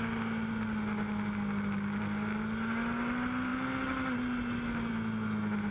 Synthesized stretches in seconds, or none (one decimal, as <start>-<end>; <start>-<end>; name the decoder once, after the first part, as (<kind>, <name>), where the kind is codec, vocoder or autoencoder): none